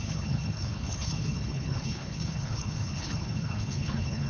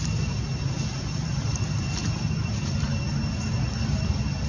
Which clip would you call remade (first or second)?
first